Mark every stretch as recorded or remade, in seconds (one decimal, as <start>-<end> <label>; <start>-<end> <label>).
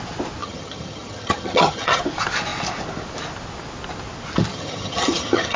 0.0-0.4 recorded; 0.4-2.0 remade; 2.0-4.5 recorded; 4.5-5.6 remade